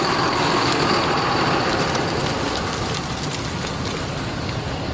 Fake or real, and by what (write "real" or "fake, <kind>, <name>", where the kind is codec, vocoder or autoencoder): real